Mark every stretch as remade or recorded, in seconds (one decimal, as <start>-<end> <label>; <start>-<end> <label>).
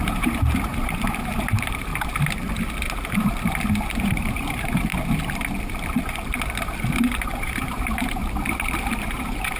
0.0-1.9 remade; 1.9-4.0 recorded; 4.0-4.9 remade; 4.9-6.9 recorded; 6.9-8.2 remade; 8.2-8.9 recorded; 8.9-9.6 remade